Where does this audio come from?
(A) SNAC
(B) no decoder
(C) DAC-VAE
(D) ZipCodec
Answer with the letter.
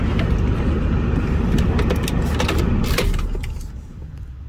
B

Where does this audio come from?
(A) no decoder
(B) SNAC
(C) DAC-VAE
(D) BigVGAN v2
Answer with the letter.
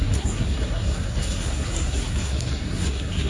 B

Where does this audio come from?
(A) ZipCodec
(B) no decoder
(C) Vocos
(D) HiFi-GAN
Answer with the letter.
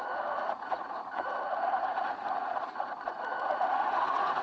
C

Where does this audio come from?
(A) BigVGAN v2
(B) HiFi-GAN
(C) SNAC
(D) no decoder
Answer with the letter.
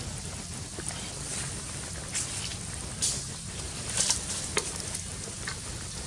D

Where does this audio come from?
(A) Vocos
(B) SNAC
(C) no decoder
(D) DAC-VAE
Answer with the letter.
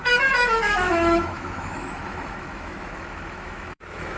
D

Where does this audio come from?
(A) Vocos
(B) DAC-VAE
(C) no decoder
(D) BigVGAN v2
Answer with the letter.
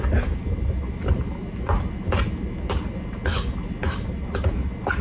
C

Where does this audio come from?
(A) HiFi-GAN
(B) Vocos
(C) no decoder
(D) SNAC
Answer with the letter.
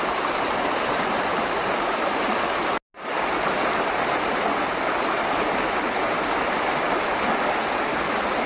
C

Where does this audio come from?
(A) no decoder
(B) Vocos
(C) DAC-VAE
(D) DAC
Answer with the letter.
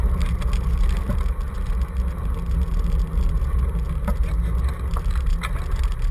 A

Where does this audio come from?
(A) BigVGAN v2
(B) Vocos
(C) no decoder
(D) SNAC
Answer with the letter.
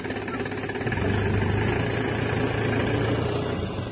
C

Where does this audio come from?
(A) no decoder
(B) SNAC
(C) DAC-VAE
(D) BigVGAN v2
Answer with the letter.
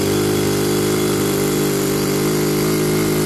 A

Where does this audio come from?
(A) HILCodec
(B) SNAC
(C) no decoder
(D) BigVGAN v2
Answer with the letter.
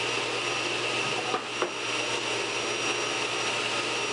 C